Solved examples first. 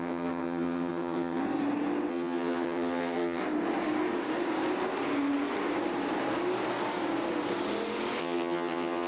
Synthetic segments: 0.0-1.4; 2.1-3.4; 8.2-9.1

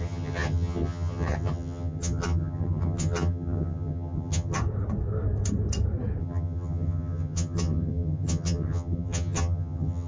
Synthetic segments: 0.0-4.6; 6.2-10.1

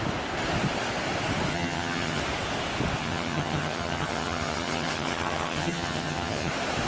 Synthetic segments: 1.5-2.2; 3.0-6.5

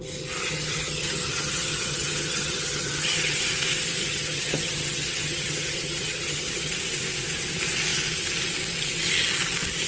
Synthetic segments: 0.4-3.4; 4.0-6.7

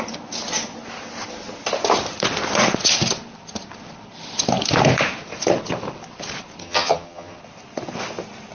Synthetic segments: 6.6-7.4

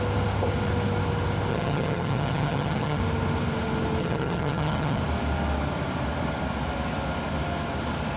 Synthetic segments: 1.5-3.0; 4.0-5.0

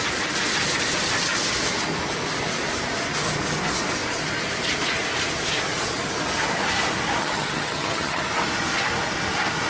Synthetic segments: 7.2-8.2

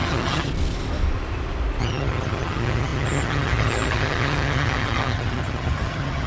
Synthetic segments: 0.0-0.5; 1.8-6.3